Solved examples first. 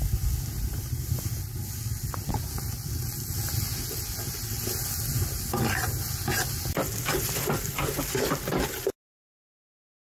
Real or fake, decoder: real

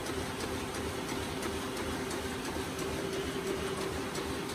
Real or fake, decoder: real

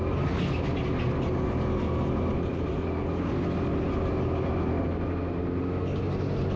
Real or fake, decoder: real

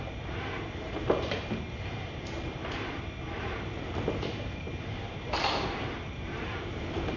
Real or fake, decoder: fake, vocoder, BigVGAN v2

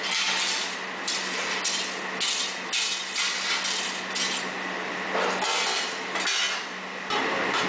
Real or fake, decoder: real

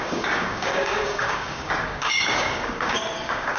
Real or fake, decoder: fake, codec, DAC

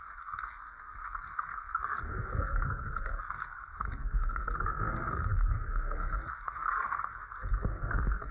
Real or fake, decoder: fake, codec, SNAC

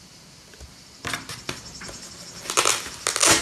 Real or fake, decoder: real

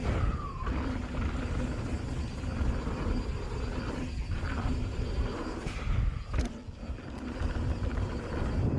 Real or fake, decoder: real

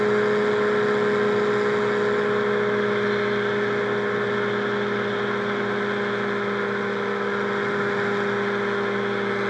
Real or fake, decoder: real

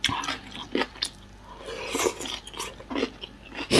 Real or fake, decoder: real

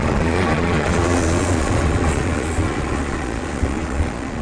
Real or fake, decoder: fake, vocoder, Vocos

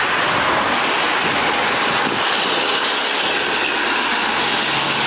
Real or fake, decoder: real